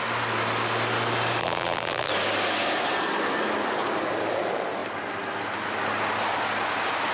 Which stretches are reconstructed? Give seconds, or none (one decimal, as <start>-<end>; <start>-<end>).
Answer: 1.4-2.1